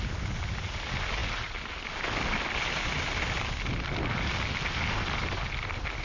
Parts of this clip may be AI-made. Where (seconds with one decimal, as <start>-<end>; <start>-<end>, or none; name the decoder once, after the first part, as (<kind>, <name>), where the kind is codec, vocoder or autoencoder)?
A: none